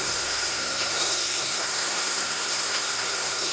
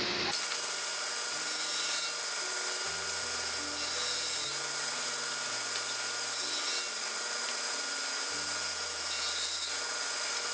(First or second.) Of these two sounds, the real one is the second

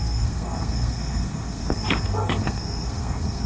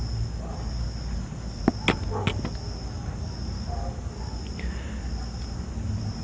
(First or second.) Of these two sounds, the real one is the second